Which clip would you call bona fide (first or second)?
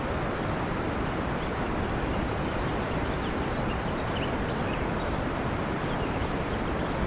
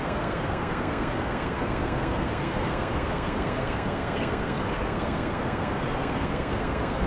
first